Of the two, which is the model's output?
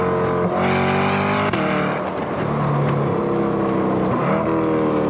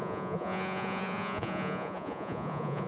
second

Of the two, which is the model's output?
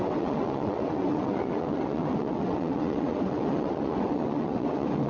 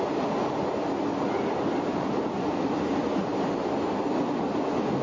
first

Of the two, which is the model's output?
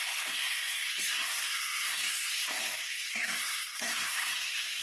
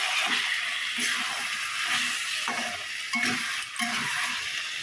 first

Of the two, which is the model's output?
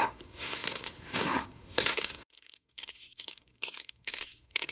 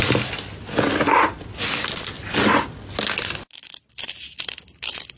first